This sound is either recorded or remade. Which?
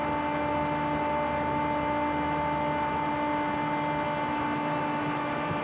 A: recorded